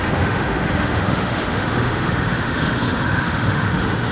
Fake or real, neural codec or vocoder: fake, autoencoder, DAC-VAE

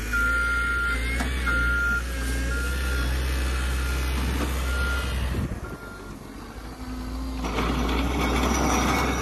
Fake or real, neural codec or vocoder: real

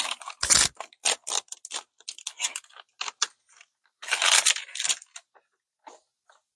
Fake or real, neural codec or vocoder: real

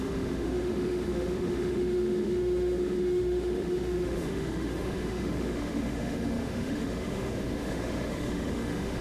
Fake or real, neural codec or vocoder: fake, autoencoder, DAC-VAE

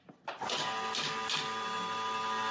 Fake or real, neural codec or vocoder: real